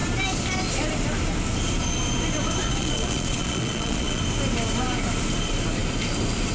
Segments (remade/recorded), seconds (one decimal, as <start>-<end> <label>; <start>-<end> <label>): 0.0-2.6 recorded; 2.6-4.2 remade; 4.2-6.5 recorded